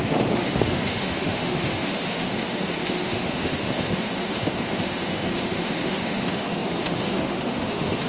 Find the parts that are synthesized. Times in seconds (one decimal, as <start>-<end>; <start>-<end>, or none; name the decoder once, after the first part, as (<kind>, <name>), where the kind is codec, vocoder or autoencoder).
0.0-8.1 (autoencoder, DAC-VAE)